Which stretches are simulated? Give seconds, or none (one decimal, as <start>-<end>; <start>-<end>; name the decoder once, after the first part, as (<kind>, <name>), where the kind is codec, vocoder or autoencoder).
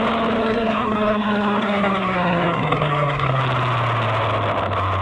0.4-3.4 (codec, SNAC)